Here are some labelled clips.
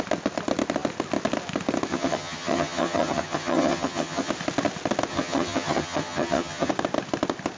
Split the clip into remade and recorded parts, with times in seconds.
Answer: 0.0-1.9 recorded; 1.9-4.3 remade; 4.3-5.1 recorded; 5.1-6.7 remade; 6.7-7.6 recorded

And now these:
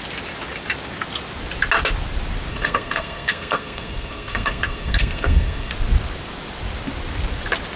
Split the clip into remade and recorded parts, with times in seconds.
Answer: 0.0-2.5 recorded; 2.5-5.7 remade; 5.7-7.8 recorded

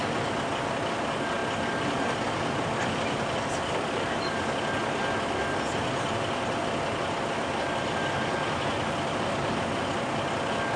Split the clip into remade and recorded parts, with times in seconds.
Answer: 0.0-10.8 recorded

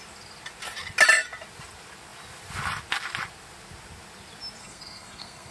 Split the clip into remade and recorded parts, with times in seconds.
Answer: 0.0-4.6 recorded; 4.6-5.5 remade

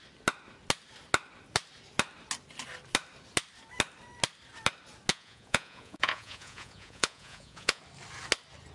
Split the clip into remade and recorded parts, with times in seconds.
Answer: 0.0-5.1 recorded; 5.1-7.8 remade; 7.8-8.7 recorded